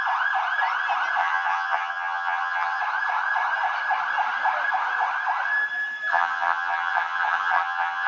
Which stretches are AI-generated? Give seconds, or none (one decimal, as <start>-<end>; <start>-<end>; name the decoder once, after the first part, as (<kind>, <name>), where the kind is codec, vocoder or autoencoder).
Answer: 1.2-2.8 (vocoder, HiFi-GAN); 6.1-8.1